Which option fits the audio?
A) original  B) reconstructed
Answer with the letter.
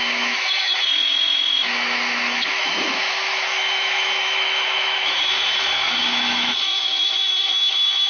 B